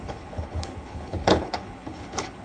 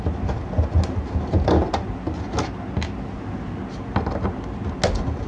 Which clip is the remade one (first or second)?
first